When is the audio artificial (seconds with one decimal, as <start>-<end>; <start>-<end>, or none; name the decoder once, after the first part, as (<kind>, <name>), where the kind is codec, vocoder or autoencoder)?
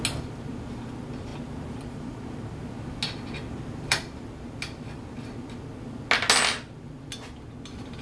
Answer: none